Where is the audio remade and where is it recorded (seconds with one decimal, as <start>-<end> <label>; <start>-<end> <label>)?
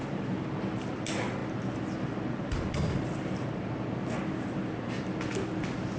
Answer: 0.0-6.0 recorded